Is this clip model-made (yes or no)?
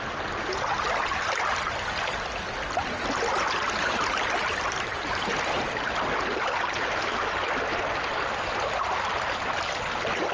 no